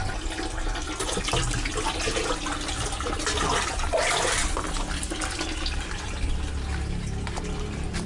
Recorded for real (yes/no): yes